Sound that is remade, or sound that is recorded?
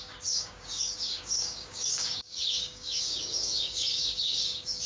remade